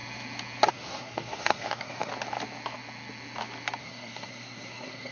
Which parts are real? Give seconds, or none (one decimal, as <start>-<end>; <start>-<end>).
0.0-0.7; 2.1-3.8